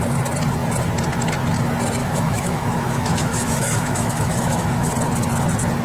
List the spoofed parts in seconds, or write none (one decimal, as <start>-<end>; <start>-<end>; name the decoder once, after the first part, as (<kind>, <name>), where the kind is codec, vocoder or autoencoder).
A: 2.0-4.9 (autoencoder, DAC-VAE)